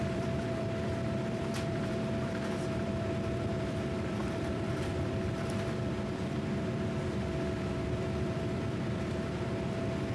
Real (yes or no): no